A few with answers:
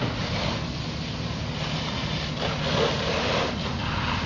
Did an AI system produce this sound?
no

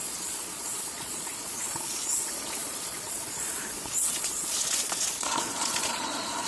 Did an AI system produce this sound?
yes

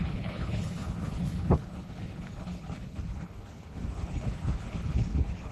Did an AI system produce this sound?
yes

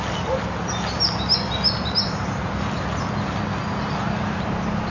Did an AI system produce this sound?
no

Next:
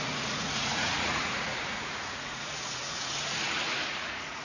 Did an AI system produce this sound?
yes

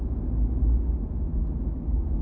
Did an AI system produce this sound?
no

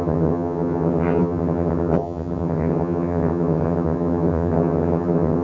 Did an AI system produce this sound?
yes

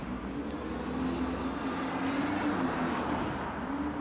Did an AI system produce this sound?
no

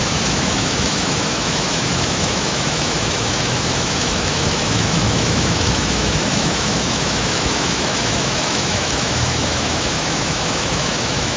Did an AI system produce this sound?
yes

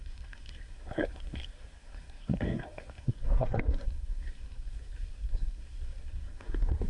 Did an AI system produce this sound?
yes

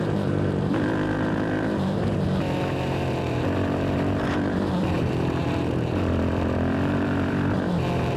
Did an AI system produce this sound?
yes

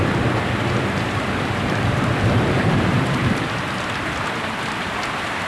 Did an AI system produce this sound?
no